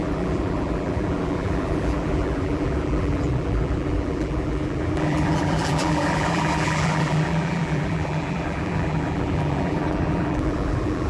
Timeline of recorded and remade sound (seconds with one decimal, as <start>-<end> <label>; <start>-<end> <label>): 0.0-11.1 remade